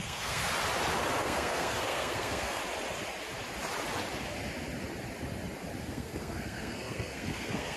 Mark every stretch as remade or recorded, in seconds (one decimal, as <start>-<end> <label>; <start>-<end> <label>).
0.0-0.4 remade; 0.4-1.2 recorded; 1.2-2.6 remade; 2.6-5.8 recorded; 5.8-7.8 remade